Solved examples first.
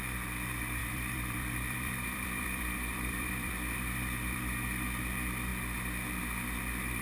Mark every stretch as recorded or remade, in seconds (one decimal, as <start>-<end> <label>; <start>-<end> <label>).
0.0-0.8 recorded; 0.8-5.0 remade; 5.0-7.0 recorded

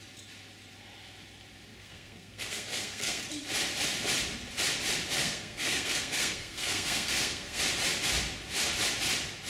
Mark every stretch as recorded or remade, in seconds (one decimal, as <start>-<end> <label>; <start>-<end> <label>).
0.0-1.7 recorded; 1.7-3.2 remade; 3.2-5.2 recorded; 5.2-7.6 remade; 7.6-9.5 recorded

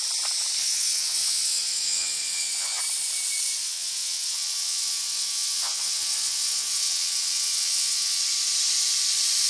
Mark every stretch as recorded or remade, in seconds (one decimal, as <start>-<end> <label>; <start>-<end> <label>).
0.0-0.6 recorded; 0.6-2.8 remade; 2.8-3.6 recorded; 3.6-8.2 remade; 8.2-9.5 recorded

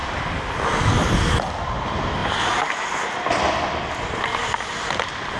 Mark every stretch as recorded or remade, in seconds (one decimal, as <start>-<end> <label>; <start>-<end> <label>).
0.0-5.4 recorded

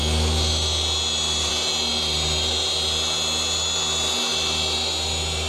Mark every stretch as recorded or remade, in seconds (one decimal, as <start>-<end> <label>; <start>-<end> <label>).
0.0-5.5 recorded